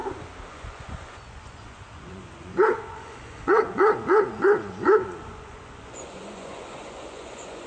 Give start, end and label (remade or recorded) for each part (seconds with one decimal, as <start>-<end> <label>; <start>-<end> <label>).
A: 0.0-0.5 recorded; 0.5-7.7 remade